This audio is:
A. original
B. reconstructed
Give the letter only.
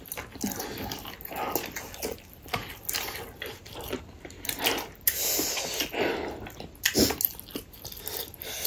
A